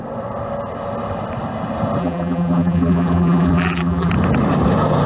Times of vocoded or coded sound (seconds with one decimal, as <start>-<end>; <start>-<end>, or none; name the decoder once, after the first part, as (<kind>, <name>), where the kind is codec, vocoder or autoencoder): 2.0-4.1 (vocoder, BigVGAN v2)